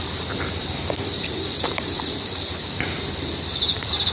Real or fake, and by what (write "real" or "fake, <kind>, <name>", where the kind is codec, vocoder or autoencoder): fake, vocoder, BigVGAN v2